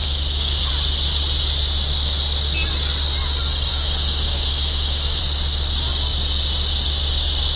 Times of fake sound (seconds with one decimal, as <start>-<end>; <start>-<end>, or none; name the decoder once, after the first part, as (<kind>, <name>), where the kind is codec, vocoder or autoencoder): 0.0-0.7 (autoencoder, DAC-VAE); 3.7-5.2